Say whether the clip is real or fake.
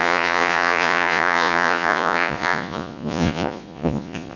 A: fake